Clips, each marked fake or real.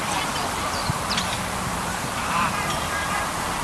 fake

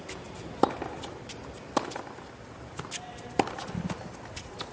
fake